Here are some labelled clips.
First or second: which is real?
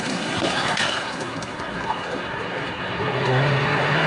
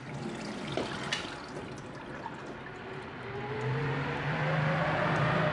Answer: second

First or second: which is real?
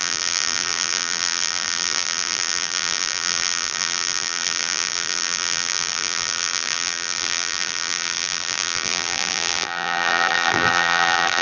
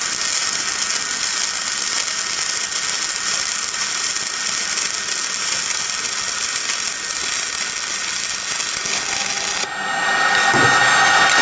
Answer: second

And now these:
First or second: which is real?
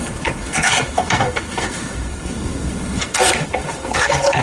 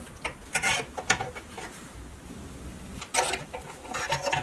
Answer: second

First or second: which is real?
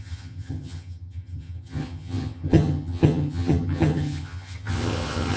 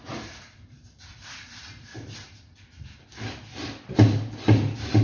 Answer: second